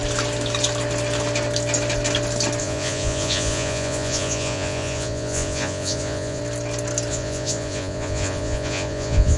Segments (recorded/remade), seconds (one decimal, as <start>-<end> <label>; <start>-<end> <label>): 0.0-2.6 recorded; 2.6-6.4 remade; 6.4-7.1 recorded; 7.1-9.4 remade